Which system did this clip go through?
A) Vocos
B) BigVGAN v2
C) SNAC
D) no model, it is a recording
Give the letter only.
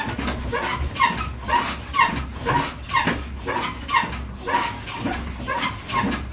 D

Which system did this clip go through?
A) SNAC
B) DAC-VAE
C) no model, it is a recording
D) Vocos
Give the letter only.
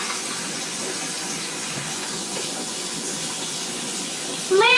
D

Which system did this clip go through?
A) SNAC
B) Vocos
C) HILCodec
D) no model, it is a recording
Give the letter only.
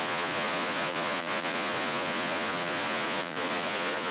B